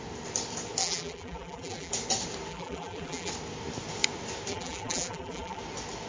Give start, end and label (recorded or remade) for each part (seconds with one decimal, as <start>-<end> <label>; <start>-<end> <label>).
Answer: 0.0-0.8 recorded; 0.8-1.9 remade; 1.9-2.5 recorded; 2.5-3.3 remade; 3.3-4.5 recorded; 4.5-5.6 remade; 5.6-6.1 recorded